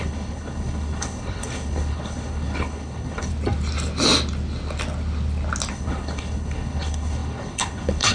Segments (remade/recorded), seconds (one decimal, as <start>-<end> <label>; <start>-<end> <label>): 0.0-3.3 remade; 3.3-5.7 recorded; 5.7-8.1 remade